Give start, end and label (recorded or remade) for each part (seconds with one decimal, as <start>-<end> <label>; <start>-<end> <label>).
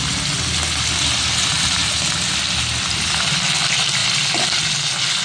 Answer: 0.0-1.8 recorded; 1.8-2.6 remade; 2.6-4.0 recorded; 4.0-4.7 remade; 4.7-5.2 recorded